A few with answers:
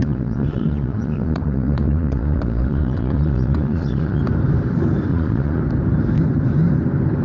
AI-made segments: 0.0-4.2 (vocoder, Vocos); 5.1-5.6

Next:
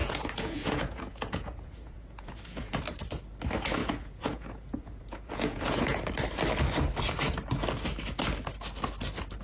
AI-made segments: 0.0-2.8 (vocoder, Vocos); 3.8-6.0

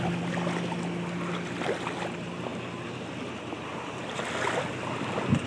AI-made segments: none

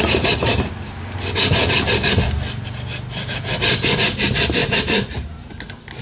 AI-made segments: 4.6-5.5 (vocoder, BigVGAN v2)